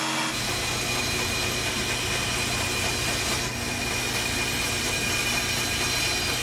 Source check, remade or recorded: recorded